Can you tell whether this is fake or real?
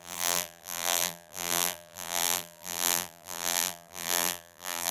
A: fake